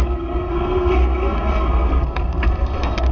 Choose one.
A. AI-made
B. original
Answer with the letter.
A